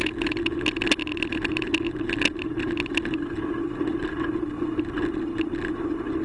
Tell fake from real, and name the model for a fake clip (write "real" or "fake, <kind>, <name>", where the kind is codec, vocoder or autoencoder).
real